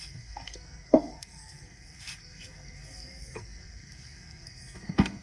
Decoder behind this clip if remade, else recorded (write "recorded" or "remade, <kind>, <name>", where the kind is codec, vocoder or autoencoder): remade, codec, SNAC